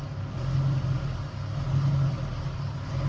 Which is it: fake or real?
real